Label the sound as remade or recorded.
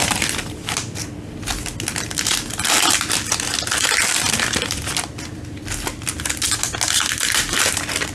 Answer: recorded